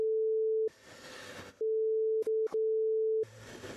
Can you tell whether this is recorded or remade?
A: recorded